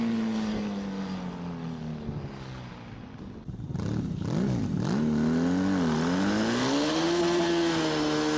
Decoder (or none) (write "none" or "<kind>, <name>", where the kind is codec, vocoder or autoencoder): none